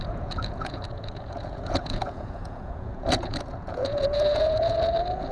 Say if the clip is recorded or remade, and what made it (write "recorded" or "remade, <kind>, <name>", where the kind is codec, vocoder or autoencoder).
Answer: remade, vocoder, Vocos